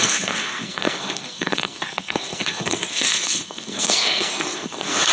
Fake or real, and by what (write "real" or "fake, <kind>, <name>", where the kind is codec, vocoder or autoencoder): fake, codec, SNAC